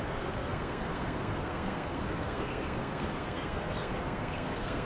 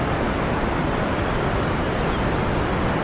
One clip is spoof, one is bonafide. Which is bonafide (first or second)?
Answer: second